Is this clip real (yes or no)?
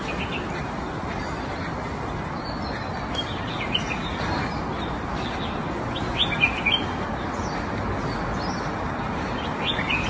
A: yes